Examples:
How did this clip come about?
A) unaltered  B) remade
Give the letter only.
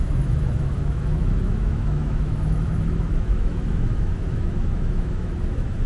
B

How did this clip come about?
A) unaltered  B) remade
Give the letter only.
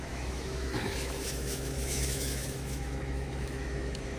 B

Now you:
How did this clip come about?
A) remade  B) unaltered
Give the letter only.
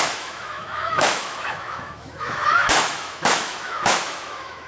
A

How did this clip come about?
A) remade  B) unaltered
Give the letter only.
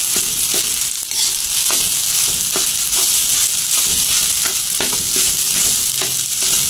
B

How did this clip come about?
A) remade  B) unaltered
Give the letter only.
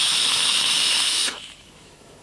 A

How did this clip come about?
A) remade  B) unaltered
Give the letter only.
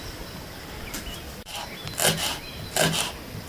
B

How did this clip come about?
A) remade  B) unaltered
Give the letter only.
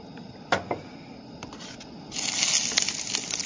B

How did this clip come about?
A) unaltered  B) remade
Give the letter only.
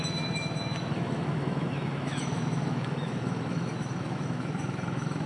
B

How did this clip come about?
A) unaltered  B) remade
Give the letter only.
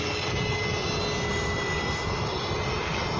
A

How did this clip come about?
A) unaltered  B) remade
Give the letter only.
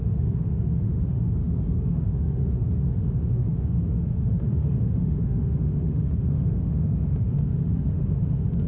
B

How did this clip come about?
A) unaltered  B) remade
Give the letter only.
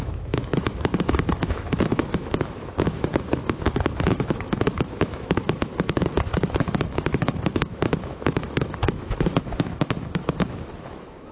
B